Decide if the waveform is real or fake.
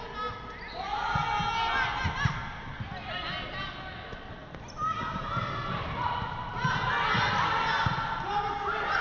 real